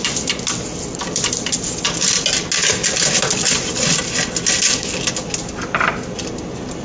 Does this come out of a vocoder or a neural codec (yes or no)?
no